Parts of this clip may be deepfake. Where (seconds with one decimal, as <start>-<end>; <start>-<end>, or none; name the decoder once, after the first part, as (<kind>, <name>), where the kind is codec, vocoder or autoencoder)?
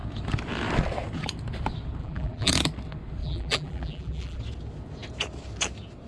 2.0-2.5 (vocoder, BigVGAN v2); 3.2-4.4